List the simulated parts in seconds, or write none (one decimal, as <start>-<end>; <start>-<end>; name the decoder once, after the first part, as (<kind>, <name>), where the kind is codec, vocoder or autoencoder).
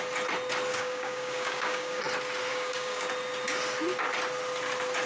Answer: 0.7-2.0 (codec, DAC); 2.5-3.1